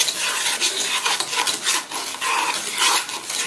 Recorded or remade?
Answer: recorded